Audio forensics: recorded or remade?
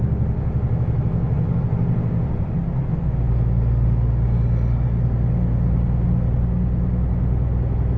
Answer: recorded